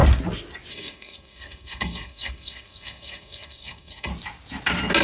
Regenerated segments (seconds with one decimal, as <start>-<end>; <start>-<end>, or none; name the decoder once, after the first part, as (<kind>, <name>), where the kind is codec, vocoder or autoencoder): 0.7-4.1 (codec, SNAC)